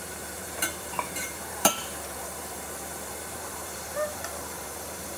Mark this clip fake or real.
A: fake